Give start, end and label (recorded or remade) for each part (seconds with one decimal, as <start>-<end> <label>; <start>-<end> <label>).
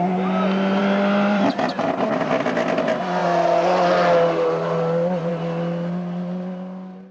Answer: 0.0-0.8 recorded; 0.8-1.5 remade; 1.5-7.1 recorded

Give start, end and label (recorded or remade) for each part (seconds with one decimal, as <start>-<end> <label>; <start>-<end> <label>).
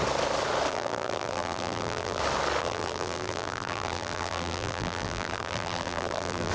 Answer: 0.0-0.7 recorded; 0.7-2.2 remade; 2.2-2.6 recorded; 2.6-6.5 remade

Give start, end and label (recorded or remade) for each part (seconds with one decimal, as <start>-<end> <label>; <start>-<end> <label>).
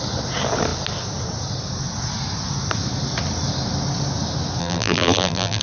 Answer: 0.0-4.6 recorded; 4.6-5.6 remade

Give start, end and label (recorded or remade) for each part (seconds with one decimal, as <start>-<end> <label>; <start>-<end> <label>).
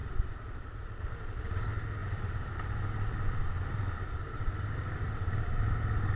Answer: 0.0-1.0 remade; 1.0-2.0 recorded; 2.0-5.7 remade; 5.7-6.2 recorded